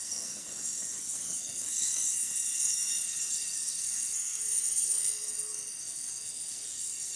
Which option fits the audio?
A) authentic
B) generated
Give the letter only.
B